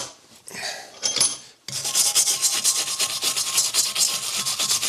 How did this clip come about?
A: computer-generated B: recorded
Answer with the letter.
B